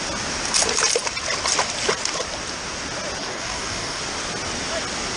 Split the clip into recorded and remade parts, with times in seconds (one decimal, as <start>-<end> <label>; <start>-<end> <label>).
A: 0.0-3.2 recorded; 3.2-4.0 remade; 4.0-5.2 recorded